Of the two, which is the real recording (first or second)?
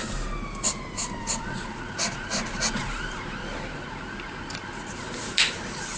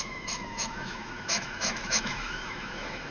first